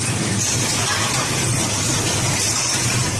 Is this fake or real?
real